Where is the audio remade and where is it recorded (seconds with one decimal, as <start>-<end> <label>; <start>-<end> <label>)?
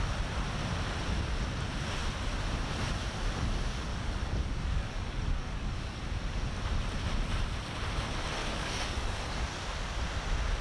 0.0-3.9 recorded; 3.9-6.0 remade; 6.0-8.4 recorded; 8.4-9.4 remade; 9.4-10.6 recorded